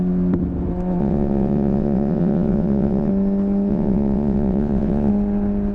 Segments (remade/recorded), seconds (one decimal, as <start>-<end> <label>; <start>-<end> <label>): 0.0-1.0 recorded; 1.0-3.1 remade; 3.1-3.7 recorded; 3.7-5.1 remade; 5.1-5.7 recorded